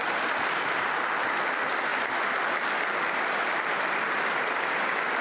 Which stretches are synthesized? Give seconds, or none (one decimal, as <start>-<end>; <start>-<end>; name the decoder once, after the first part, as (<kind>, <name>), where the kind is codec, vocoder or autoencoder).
none